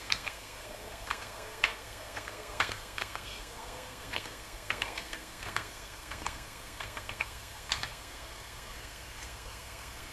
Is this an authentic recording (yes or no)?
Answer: no